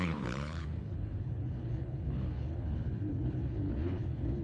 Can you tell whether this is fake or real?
fake